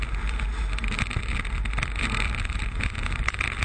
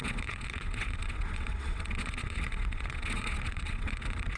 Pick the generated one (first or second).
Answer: second